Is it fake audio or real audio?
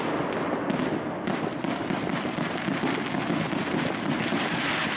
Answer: real